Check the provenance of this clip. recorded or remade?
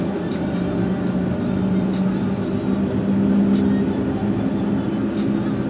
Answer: recorded